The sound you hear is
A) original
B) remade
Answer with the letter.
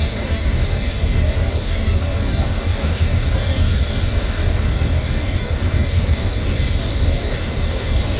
B